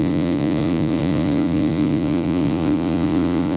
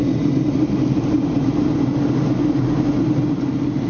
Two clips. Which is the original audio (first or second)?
second